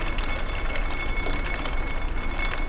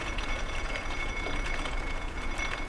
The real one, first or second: first